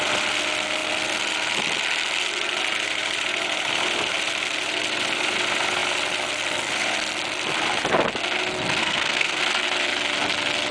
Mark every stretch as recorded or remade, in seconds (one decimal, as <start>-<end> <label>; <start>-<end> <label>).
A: 0.0-8.8 recorded; 8.8-9.4 remade; 9.4-10.7 recorded

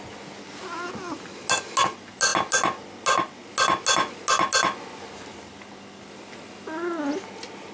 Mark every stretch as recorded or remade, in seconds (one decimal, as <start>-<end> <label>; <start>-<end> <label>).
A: 0.0-7.7 recorded

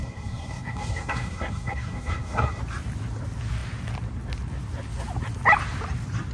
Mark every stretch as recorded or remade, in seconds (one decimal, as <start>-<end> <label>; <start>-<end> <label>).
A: 0.0-2.6 remade; 2.6-6.3 recorded

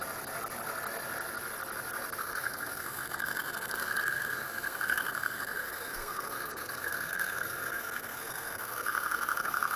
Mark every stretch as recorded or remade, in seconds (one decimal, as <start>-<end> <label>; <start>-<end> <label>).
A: 0.0-2.2 recorded; 2.2-9.8 remade

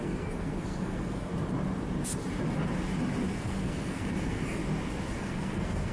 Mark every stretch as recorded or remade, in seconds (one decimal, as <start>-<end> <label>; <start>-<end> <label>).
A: 0.0-1.3 remade; 1.3-3.3 recorded; 3.3-4.6 remade; 4.6-5.2 recorded; 5.2-5.9 remade

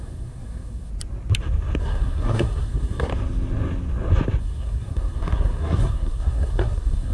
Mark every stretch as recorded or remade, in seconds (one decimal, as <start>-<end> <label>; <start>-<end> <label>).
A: 0.0-0.9 remade; 0.9-1.8 recorded; 1.8-3.1 remade; 3.1-4.4 recorded; 4.4-7.1 remade